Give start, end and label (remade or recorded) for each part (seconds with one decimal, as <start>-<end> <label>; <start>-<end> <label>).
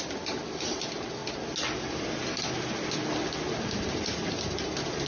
0.0-5.1 recorded